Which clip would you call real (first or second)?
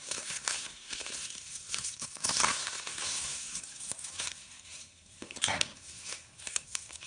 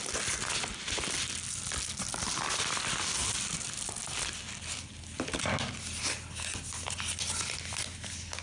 second